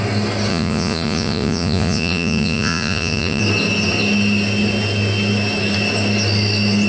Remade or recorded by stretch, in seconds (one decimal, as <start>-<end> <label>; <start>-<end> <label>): 0.0-0.5 recorded; 0.5-3.4 remade; 3.4-6.9 recorded